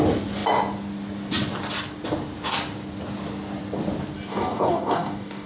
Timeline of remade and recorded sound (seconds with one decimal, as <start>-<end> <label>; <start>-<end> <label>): 0.0-4.3 recorded; 4.3-5.5 remade